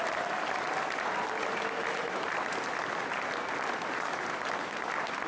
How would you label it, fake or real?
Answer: real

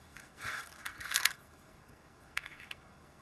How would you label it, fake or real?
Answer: fake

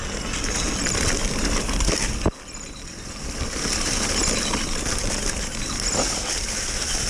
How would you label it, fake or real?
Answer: real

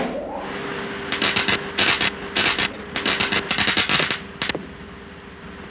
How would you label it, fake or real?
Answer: real